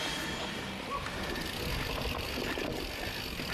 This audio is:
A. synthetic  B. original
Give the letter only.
B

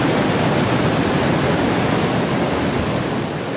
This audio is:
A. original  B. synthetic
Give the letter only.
A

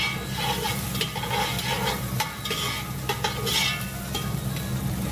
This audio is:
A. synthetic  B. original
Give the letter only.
B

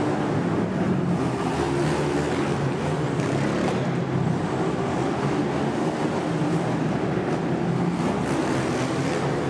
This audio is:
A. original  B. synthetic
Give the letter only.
A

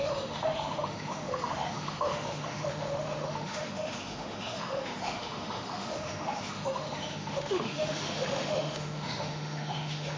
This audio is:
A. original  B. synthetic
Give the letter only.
B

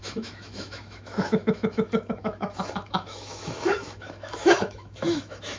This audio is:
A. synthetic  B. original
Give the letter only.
A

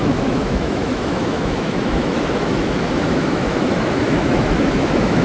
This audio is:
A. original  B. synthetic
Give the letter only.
B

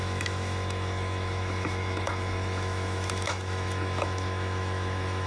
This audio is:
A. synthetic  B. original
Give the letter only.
A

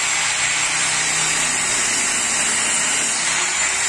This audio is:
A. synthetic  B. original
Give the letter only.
B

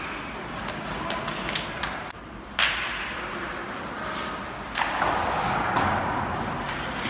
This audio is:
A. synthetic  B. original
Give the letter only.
B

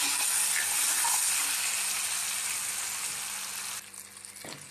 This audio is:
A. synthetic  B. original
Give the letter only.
B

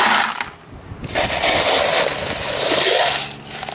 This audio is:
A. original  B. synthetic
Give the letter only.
A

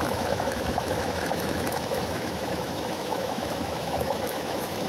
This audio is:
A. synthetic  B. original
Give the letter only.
A